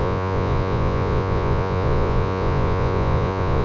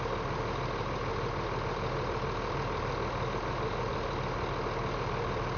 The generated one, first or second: first